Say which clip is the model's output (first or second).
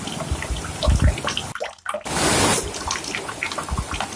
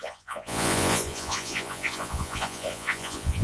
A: second